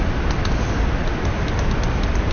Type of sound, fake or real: real